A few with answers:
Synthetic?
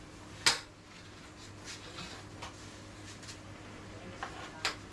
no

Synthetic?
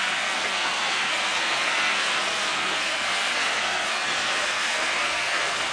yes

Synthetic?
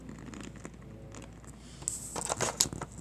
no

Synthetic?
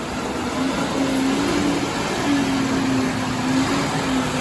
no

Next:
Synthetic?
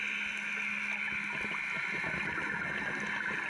no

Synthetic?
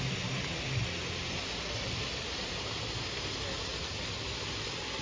no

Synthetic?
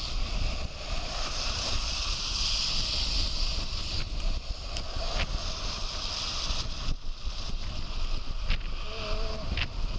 no